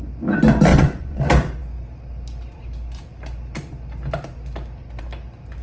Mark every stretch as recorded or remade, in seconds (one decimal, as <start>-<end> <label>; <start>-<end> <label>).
0.0-0.7 recorded; 0.7-1.2 remade; 1.2-5.6 recorded